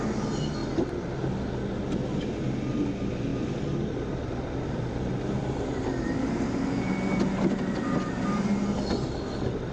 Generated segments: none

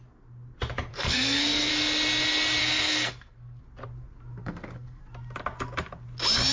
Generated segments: 0.9-1.7 (codec, SNAC); 2.6-3.6; 4.4-5.0

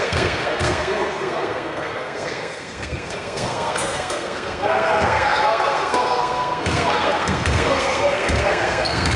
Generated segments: 0.0-9.2 (codec, SNAC)